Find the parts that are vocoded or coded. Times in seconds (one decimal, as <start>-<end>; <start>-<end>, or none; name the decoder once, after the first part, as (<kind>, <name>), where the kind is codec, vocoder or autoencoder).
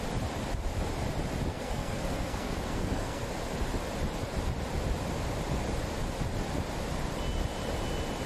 1.5-3.3 (codec, SNAC)